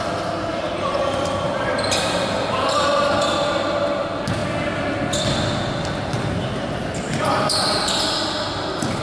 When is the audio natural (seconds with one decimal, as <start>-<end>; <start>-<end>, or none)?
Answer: 0.0-0.5; 3.2-9.0